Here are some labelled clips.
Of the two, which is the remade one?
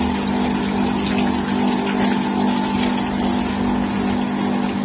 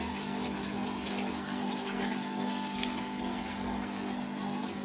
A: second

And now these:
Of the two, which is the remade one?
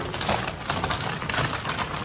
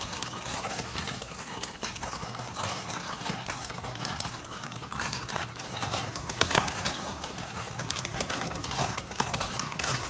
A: second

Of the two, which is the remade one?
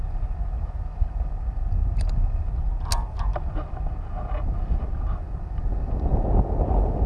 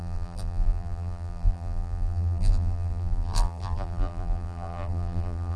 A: second